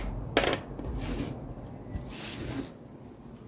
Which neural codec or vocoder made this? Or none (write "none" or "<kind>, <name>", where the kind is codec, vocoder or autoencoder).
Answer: none